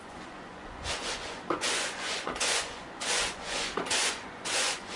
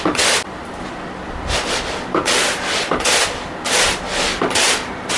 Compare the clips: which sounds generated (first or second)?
first